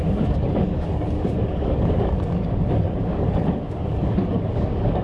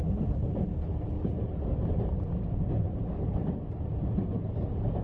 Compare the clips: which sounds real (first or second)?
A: second